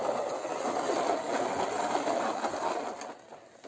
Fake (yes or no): no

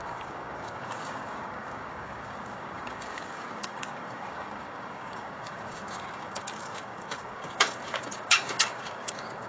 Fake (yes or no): yes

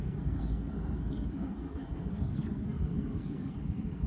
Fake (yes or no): yes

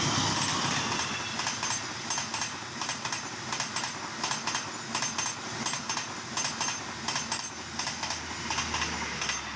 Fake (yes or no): no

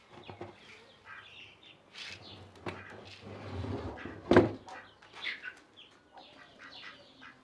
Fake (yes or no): no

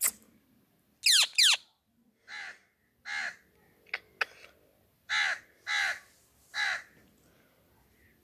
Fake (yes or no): no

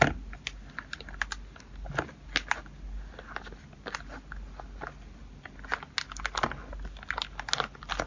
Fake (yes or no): no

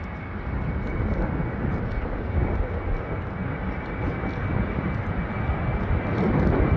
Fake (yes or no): no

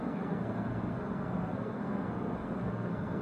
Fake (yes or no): yes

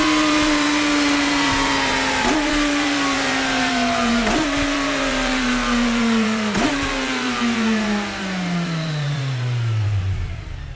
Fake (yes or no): yes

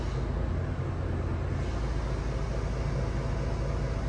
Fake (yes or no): no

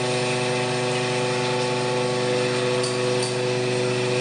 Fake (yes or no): no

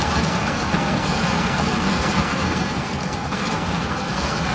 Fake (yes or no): yes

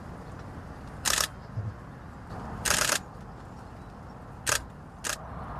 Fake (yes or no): no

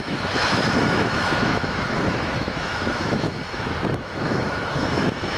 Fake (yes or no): yes